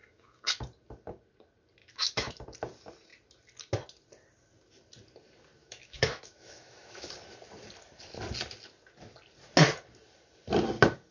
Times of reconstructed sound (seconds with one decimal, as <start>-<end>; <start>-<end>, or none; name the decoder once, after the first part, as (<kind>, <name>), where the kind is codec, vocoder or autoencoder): 0.0-0.6 (autoencoder, DAC-VAE); 1.8-2.3; 5.6-7.1